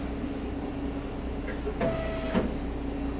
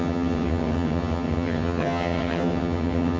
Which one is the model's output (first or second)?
second